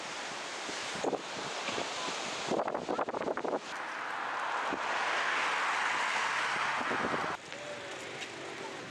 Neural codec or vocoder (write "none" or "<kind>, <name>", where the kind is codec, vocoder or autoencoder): none